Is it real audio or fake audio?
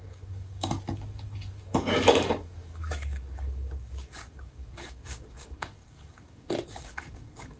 fake